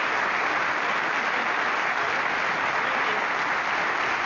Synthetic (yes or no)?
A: no